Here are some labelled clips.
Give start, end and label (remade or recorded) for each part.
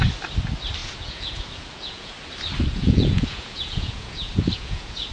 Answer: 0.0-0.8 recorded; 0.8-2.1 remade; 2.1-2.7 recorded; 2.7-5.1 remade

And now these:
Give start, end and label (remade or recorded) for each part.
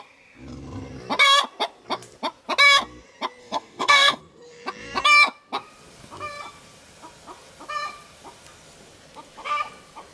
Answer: 0.0-3.4 recorded; 3.4-4.2 remade; 4.2-10.1 recorded